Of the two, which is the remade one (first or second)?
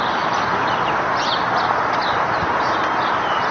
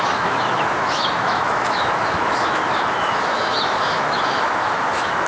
second